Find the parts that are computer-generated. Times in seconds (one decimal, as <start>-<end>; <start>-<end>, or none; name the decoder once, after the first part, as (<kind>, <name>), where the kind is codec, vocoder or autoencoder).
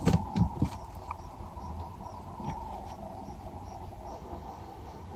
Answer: 4.1-5.2 (autoencoder, DAC-VAE)